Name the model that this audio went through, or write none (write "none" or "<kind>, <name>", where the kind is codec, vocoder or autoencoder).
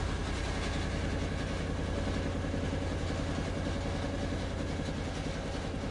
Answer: none